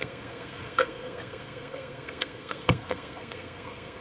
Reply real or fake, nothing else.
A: fake